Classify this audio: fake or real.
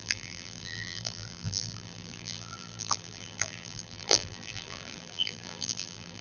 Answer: fake